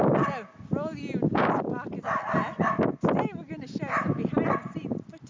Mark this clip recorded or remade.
recorded